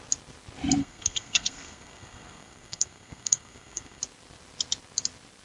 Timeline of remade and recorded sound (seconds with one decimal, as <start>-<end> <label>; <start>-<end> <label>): 0.0-0.8 recorded; 0.8-4.0 remade; 4.0-5.4 recorded